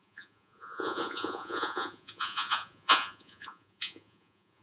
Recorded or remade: remade